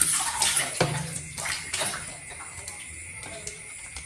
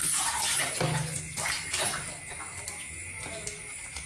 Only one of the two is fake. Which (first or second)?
first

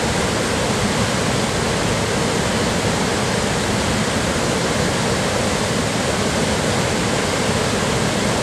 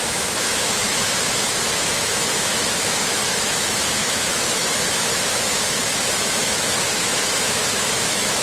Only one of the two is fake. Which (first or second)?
second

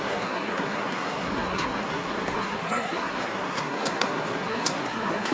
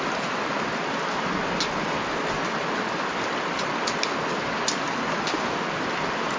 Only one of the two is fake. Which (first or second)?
first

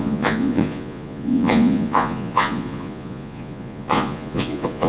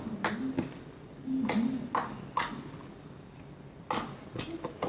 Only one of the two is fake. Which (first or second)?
first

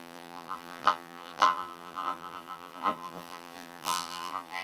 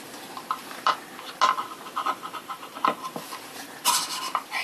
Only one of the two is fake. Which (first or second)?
first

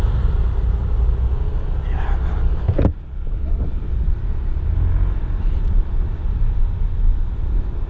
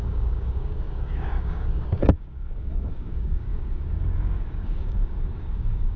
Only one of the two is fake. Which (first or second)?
second